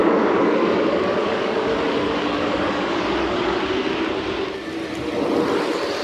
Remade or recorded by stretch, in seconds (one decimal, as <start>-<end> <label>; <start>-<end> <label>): 0.0-3.6 remade; 3.6-6.0 recorded